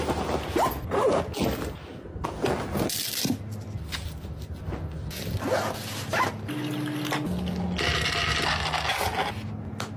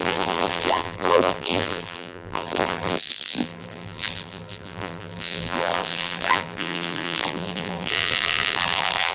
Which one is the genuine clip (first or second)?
first